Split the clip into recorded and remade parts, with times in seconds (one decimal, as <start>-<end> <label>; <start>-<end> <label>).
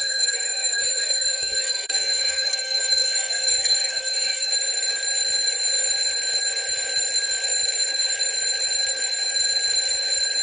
0.0-4.5 remade; 4.5-10.4 recorded